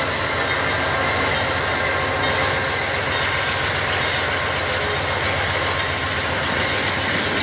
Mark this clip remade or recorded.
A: recorded